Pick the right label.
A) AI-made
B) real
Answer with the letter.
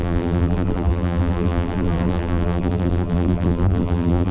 A